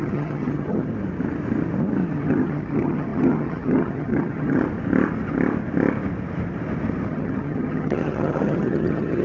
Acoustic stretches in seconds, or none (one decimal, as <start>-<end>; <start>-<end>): 0.9-2.1; 4.6-7.1